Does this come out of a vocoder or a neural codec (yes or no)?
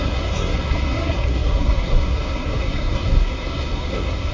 yes